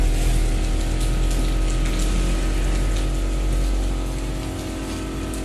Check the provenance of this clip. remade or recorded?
recorded